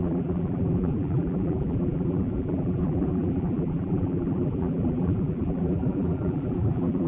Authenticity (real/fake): fake